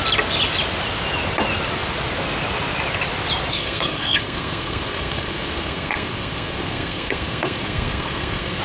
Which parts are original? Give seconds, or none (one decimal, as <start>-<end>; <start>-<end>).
0.0-3.5

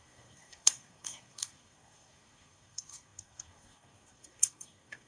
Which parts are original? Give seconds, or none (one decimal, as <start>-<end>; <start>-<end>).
none

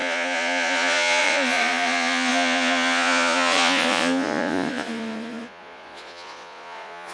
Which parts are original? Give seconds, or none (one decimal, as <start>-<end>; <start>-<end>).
none

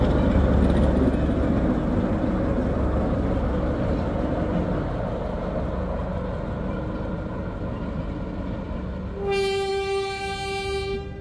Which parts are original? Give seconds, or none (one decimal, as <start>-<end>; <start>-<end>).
0.0-9.7; 10.2-11.2

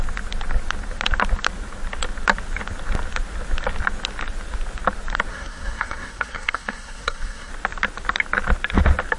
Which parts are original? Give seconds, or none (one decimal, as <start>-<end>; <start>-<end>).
0.0-5.3; 7.5-9.2